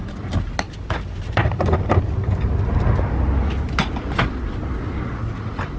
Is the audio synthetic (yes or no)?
no